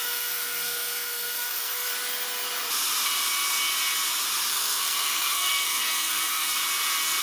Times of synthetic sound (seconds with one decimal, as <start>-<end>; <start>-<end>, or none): 0.0-1.9; 4.5-6.6